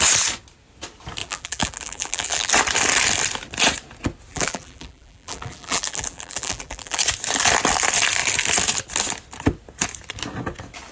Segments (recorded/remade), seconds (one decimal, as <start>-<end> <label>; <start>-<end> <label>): 0.0-1.2 recorded; 1.2-2.5 remade; 2.5-4.3 recorded; 4.3-7.0 remade; 7.0-10.9 recorded